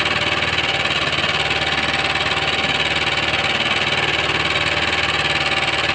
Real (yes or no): yes